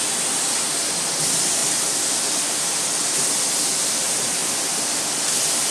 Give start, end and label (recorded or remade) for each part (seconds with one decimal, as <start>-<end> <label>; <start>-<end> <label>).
0.0-5.7 recorded